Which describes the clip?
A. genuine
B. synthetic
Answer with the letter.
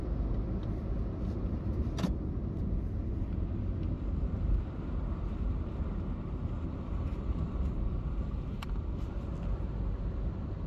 B